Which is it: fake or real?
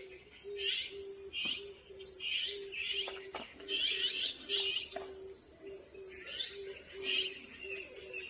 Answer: real